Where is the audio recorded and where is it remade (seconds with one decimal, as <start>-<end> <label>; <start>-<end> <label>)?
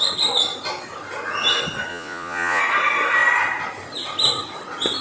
0.0-1.9 recorded; 1.9-2.6 remade; 2.6-5.0 recorded